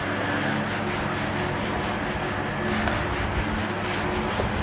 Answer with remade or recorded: recorded